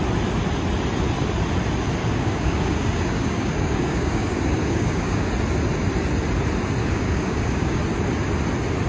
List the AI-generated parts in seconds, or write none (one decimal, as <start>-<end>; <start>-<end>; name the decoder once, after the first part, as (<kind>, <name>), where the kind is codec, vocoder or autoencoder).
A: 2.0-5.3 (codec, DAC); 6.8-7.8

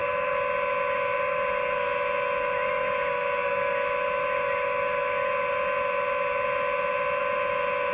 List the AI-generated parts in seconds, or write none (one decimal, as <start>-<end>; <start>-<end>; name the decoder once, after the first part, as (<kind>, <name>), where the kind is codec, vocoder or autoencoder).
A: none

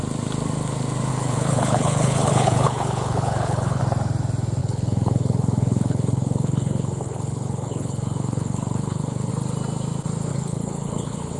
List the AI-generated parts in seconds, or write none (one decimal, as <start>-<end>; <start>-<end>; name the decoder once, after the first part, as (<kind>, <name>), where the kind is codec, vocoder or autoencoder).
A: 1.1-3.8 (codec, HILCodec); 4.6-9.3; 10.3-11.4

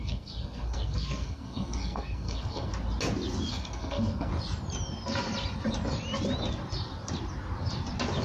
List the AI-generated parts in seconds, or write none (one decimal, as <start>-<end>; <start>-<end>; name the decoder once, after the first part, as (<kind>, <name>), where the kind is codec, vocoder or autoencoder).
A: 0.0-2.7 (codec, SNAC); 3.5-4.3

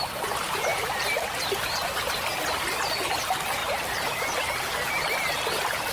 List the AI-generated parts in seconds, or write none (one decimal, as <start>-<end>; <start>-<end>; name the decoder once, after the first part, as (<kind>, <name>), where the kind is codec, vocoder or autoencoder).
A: 3.6-4.2 (vocoder, BigVGAN v2)

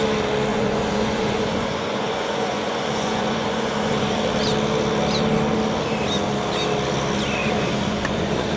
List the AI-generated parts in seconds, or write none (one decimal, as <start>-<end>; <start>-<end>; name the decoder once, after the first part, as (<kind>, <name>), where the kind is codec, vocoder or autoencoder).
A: 0.5-4.2 (vocoder, Vocos); 7.4-8.6